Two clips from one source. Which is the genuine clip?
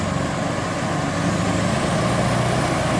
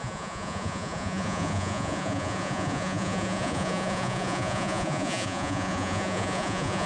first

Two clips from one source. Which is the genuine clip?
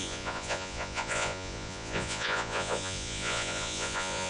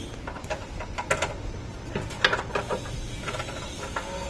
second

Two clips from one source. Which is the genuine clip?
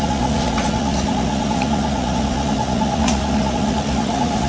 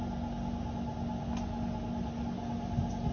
second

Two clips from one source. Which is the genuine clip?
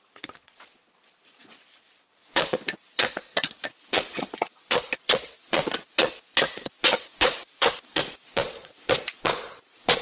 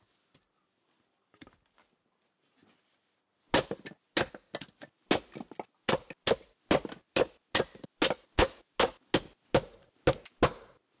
second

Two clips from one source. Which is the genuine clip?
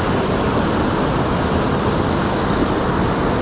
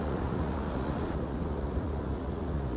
first